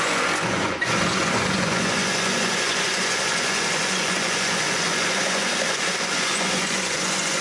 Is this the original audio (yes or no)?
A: no